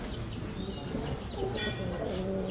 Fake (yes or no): no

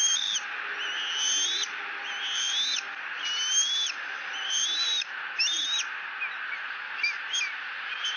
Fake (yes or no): no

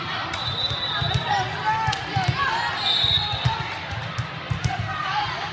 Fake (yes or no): no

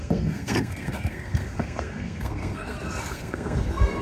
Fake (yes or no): yes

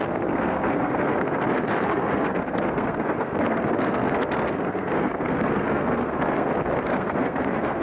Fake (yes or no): yes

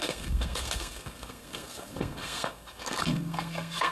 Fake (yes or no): yes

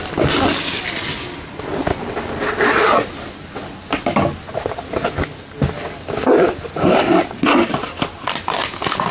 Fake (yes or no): no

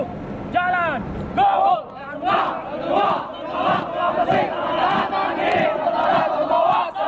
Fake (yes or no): no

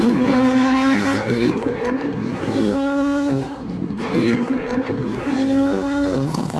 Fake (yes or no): yes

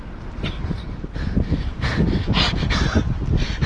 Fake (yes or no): no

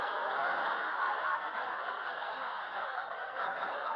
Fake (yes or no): yes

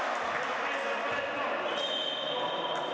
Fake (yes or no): no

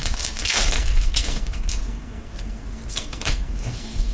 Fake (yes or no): yes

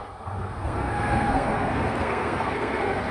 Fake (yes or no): yes